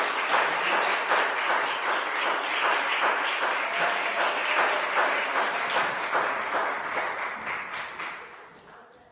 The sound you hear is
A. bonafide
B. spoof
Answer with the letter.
A